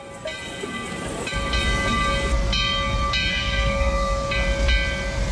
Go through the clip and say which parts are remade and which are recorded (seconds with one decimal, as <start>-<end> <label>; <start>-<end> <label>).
0.0-3.3 recorded; 3.3-4.3 remade; 4.3-5.3 recorded